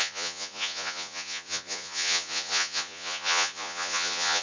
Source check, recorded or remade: remade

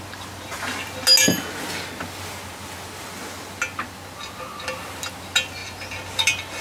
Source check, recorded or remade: recorded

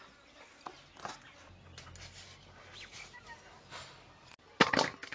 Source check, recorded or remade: recorded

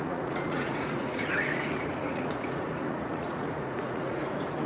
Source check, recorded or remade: remade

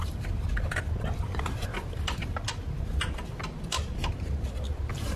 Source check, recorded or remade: recorded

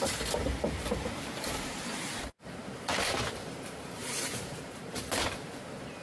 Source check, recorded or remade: remade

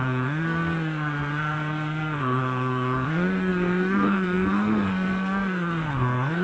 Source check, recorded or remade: remade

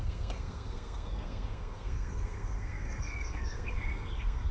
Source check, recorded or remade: remade